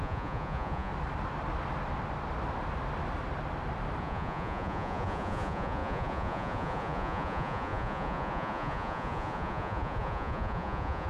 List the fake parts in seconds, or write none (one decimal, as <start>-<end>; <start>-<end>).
0.0-0.9; 4.0-11.1